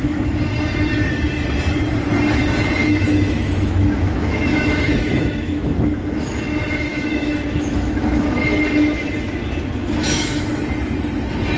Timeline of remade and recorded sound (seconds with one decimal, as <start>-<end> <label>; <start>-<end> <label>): 0.0-2.8 recorded; 2.8-5.9 remade; 5.9-6.9 recorded; 6.9-8.4 remade; 8.4-10.0 recorded; 10.0-10.6 remade; 10.6-11.6 recorded